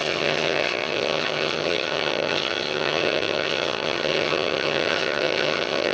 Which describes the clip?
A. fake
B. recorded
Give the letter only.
A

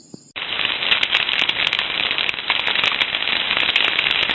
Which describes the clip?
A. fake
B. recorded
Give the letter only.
B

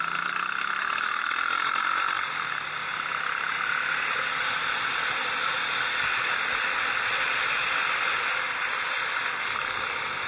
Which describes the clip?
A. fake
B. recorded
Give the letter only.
B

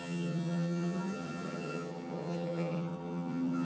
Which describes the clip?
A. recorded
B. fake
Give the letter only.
B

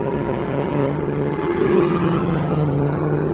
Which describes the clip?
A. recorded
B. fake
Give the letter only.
B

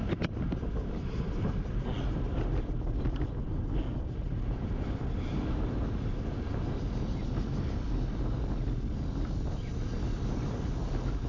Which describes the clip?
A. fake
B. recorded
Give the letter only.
B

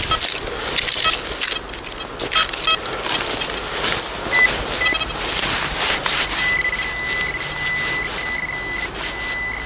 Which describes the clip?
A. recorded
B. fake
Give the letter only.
A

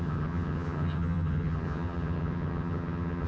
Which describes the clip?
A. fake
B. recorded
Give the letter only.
A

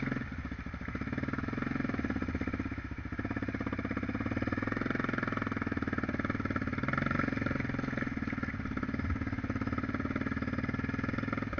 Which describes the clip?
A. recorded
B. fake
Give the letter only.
A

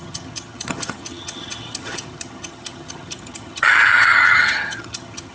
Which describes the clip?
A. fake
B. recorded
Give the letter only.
A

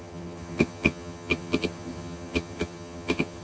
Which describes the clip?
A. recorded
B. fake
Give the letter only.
B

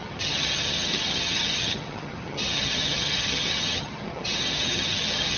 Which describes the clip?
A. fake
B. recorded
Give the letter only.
A